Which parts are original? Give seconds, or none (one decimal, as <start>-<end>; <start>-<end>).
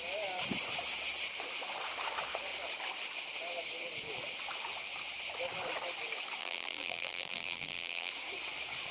0.0-6.4; 8.1-8.9